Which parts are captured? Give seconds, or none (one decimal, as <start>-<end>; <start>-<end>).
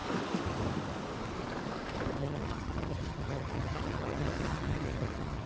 0.0-2.2